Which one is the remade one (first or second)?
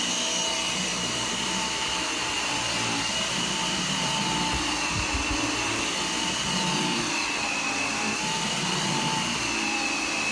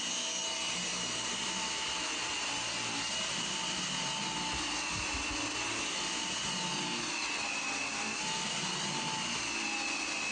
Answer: first